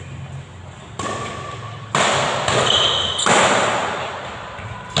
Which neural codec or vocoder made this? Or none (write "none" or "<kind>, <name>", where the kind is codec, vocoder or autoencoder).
none